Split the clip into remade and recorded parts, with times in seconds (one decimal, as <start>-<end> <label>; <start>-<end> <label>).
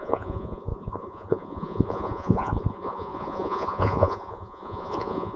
0.0-5.4 remade